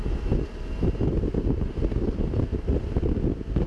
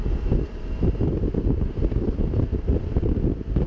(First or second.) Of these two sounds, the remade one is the second